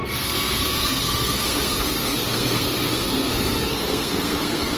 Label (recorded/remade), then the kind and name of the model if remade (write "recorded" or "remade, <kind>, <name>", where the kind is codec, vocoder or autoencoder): remade, codec, SNAC